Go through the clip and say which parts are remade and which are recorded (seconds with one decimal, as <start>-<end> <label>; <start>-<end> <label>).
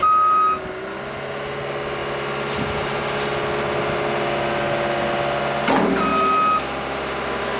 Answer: 0.0-7.6 recorded